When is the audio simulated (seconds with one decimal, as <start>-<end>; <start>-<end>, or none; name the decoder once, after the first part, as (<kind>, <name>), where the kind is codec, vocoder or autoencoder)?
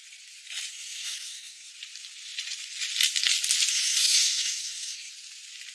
0.7-1.7 (codec, SNAC); 3.7-5.1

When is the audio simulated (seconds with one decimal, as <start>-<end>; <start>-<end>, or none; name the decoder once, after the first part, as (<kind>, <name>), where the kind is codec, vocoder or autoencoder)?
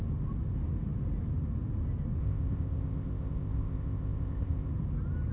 2.2-4.7 (codec, ZipCodec)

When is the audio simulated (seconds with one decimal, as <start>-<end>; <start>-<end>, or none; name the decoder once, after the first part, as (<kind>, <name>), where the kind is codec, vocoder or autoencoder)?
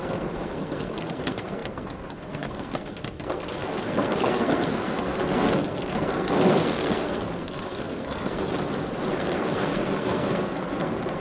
0.0-8.5 (codec, SNAC); 9.1-11.2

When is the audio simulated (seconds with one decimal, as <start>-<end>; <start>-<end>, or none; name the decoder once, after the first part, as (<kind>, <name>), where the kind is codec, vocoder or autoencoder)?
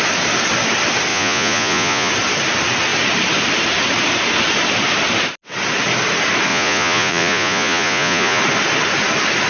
1.1-2.1 (vocoder, Vocos); 6.5-8.4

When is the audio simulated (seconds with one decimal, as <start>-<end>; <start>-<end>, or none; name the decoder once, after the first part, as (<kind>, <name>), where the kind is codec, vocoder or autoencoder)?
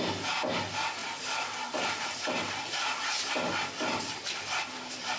none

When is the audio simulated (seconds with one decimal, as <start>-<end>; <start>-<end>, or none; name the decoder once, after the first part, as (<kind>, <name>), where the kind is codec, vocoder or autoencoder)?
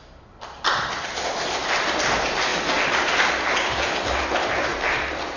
none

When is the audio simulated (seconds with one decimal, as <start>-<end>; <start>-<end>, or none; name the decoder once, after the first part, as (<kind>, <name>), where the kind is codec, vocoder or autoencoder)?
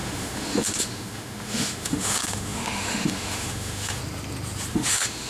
0.0-4.0 (autoencoder, DAC-VAE); 4.7-5.3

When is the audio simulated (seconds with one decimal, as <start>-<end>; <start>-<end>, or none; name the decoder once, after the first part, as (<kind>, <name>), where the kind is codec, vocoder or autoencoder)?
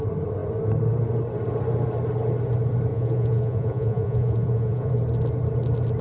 2.9-4.9 (vocoder, Vocos)